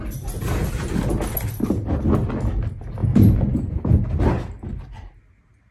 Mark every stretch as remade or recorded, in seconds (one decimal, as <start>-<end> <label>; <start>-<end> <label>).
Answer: 0.0-3.0 recorded; 3.0-3.8 remade; 3.8-5.7 recorded

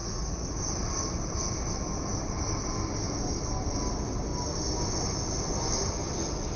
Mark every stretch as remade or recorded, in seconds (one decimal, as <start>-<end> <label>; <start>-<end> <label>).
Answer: 0.0-0.6 remade; 0.6-6.6 recorded

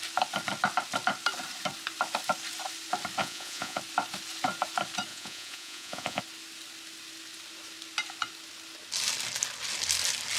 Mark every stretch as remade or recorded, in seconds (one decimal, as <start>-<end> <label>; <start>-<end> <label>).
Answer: 0.0-3.2 recorded; 3.2-3.8 remade; 3.8-5.1 recorded; 5.1-6.2 remade; 6.2-10.4 recorded

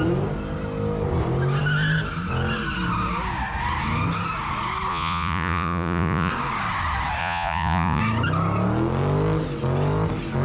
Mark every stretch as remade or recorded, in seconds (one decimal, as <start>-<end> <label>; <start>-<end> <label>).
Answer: 0.0-4.9 recorded; 4.9-6.3 remade; 6.3-7.2 recorded; 7.2-8.0 remade; 8.0-10.4 recorded

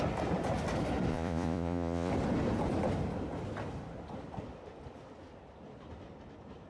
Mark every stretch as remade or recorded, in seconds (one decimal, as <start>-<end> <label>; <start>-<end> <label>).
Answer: 0.0-1.1 recorded; 1.1-2.1 remade; 2.1-6.7 recorded

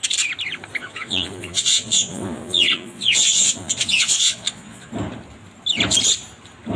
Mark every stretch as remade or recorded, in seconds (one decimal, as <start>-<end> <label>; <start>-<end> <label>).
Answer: 0.0-0.8 recorded; 0.8-4.9 remade; 4.9-6.8 recorded